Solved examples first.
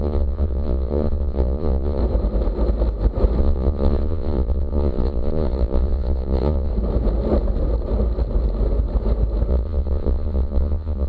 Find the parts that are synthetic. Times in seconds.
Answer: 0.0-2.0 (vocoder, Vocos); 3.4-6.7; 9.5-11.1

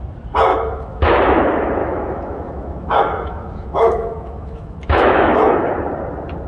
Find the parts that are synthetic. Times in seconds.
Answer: 0.5-1.4 (autoencoder, DAC-VAE); 1.8-5.7